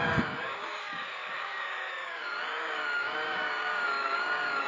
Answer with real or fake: fake